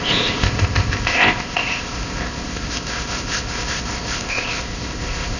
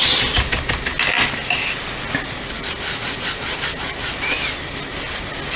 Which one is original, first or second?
second